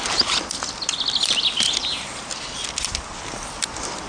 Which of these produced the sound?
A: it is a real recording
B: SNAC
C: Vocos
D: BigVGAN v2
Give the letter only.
A